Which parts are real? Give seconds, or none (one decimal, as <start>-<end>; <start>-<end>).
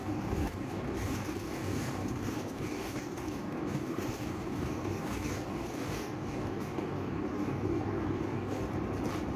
8.6-9.4